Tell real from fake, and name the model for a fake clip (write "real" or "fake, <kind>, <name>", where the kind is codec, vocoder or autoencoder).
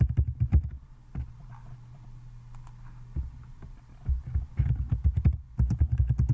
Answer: real